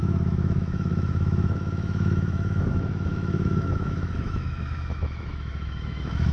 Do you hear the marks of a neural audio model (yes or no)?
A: yes